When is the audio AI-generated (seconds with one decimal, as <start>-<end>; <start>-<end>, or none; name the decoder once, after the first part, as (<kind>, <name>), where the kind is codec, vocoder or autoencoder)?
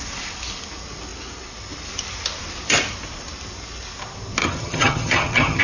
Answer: 4.4-5.6 (vocoder, HiFi-GAN)